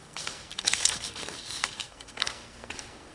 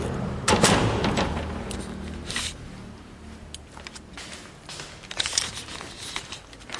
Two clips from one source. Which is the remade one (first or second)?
first